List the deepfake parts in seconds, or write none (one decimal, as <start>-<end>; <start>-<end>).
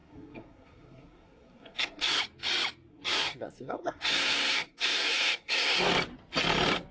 0.0-2.2; 2.9-5.9